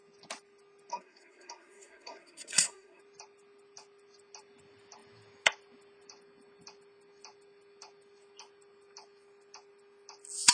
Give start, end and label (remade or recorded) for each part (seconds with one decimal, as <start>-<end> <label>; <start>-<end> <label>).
0.0-0.9 recorded; 0.9-3.0 remade; 3.0-10.5 recorded

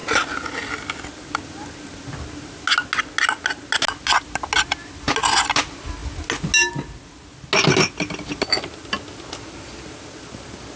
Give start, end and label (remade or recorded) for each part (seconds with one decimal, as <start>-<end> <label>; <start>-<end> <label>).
0.0-10.8 recorded

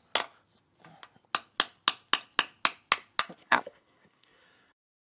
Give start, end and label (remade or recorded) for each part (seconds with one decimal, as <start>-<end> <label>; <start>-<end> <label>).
0.0-3.4 recorded; 3.4-5.1 remade

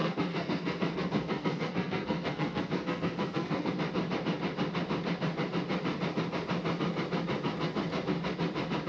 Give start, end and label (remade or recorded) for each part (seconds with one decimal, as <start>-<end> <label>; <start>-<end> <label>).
0.0-3.7 remade; 3.7-8.9 recorded

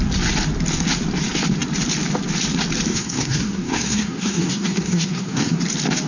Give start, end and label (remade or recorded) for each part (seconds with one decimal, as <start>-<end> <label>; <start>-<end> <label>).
0.0-2.9 recorded; 2.9-5.6 remade; 5.6-6.1 recorded

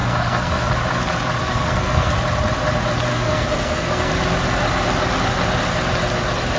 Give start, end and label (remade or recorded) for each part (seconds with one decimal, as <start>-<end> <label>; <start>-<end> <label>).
0.0-0.7 remade; 0.7-1.4 recorded; 1.4-2.1 remade; 2.1-3.1 recorded; 3.1-4.1 remade; 4.1-6.6 recorded

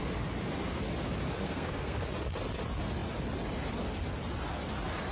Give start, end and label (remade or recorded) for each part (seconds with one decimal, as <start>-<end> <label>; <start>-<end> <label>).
0.0-1.4 recorded; 1.4-2.0 remade; 2.0-5.1 recorded

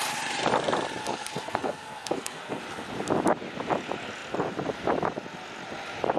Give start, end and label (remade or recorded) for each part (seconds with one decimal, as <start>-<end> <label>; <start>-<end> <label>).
0.0-1.0 recorded; 1.0-2.6 remade; 2.6-6.2 recorded